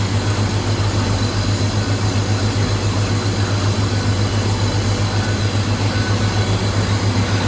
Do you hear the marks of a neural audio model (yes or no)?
no